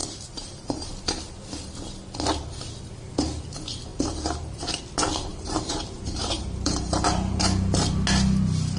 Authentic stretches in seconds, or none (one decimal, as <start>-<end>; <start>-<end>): 0.9-3.9; 4.8-5.3; 7.4-8.8